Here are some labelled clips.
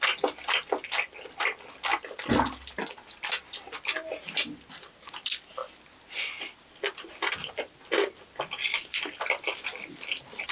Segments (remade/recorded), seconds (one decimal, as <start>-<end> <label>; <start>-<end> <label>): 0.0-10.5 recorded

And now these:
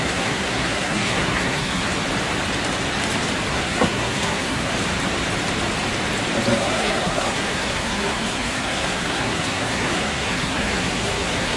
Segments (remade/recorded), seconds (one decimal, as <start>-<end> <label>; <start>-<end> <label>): 0.0-1.8 remade; 1.8-3.5 recorded; 3.5-4.7 remade; 4.7-6.6 recorded; 6.6-11.6 remade

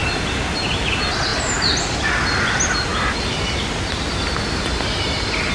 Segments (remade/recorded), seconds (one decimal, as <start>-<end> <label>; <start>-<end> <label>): 0.0-5.5 recorded

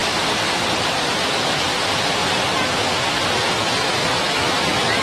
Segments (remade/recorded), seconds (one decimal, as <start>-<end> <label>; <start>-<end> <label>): 0.0-0.8 recorded; 0.8-1.7 remade; 1.7-3.5 recorded; 3.5-5.0 remade

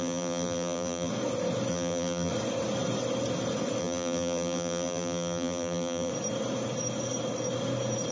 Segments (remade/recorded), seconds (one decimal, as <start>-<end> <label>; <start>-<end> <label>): 0.0-1.1 remade; 1.1-1.7 recorded; 1.7-2.3 remade; 2.3-3.8 recorded; 3.8-6.1 remade; 6.1-8.1 recorded

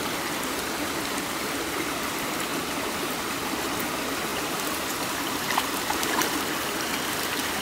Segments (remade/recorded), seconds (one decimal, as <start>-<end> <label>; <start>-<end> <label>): 0.0-4.3 recorded; 4.3-6.3 remade; 6.3-7.6 recorded

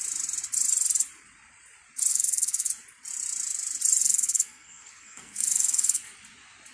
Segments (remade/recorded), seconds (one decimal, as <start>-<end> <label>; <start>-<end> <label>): 0.0-2.1 recorded; 2.1-2.7 remade; 2.7-4.0 recorded; 4.0-6.1 remade; 6.1-6.7 recorded